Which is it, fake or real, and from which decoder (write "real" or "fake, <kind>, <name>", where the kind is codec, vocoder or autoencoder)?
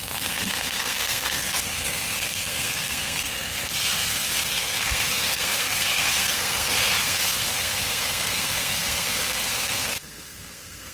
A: fake, codec, SNAC